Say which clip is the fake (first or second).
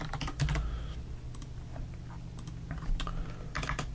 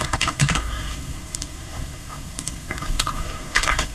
second